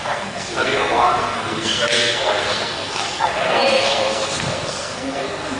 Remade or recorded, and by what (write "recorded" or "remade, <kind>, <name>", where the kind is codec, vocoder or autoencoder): remade, codec, SNAC